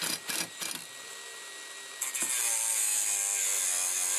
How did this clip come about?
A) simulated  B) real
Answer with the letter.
B